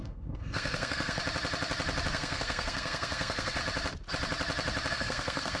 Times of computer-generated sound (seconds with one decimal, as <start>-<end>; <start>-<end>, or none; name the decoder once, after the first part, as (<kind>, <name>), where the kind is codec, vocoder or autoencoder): 0.0-1.2 (codec, SNAC); 2.1-3.6; 4.9-5.6

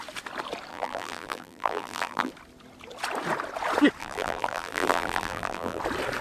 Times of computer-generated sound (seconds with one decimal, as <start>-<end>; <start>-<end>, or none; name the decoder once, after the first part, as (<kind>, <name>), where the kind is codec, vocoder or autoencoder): 0.7-2.3 (vocoder, BigVGAN v2); 4.0-5.8

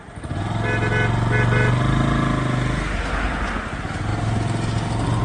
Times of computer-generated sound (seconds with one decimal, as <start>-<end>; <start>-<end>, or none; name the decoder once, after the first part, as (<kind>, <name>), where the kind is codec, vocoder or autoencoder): none

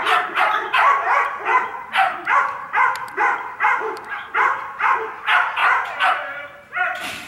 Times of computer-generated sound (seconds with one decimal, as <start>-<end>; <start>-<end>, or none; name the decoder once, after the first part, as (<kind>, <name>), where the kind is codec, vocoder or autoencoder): 0.0-5.6 (vocoder, BigVGAN v2); 6.3-7.3

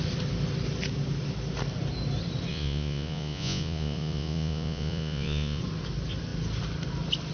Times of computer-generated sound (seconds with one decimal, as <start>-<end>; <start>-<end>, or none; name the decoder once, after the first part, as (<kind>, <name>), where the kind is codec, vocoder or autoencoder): 2.5-5.6 (vocoder, Vocos)

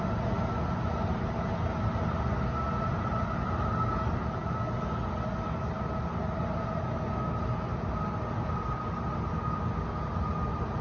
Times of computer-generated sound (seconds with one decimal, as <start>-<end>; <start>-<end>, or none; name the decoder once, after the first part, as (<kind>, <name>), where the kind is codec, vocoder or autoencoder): none

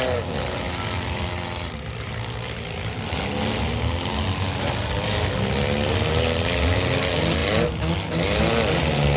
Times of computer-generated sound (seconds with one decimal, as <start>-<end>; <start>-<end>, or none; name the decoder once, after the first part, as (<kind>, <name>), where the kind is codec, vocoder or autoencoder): none